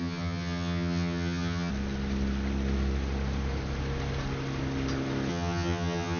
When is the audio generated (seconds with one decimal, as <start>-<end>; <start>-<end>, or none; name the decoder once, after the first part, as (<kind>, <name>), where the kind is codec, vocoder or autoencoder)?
0.0-1.7 (vocoder, HiFi-GAN); 5.3-6.2